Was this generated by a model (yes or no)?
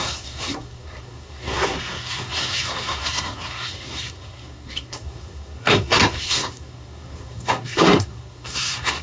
yes